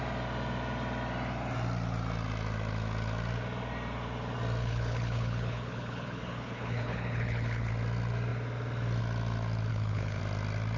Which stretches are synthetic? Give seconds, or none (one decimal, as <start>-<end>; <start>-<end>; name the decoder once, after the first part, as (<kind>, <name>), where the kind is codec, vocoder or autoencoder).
4.6-7.7 (codec, HILCodec); 9.7-10.2